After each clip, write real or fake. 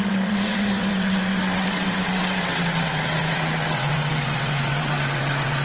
fake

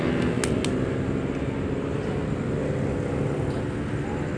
real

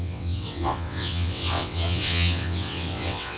fake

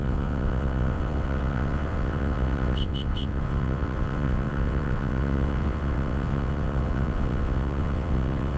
fake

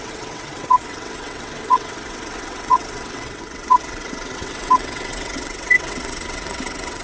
fake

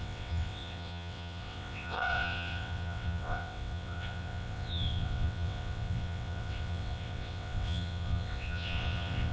fake